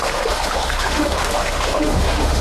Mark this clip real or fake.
fake